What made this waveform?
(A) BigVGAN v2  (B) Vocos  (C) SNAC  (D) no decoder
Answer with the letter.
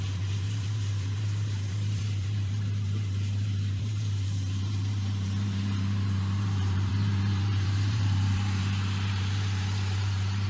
A